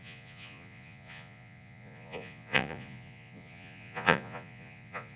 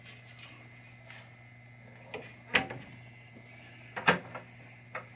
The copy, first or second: first